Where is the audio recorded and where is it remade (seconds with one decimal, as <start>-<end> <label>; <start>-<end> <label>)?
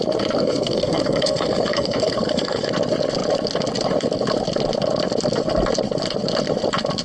0.0-0.4 recorded; 0.4-2.7 remade; 2.7-7.0 recorded